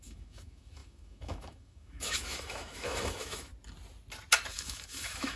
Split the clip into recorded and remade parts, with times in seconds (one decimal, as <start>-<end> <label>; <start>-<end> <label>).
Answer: 0.0-3.5 remade; 3.5-4.5 recorded; 4.5-5.4 remade